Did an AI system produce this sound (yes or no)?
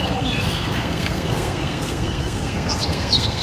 yes